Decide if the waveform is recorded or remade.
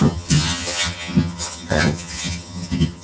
remade